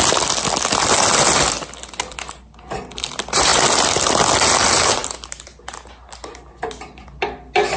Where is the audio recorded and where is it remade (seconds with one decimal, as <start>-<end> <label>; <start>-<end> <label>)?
0.0-7.8 recorded